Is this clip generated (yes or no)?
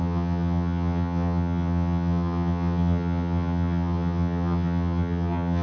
yes